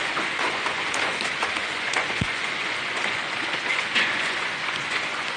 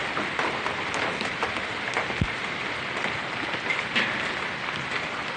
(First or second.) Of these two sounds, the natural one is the second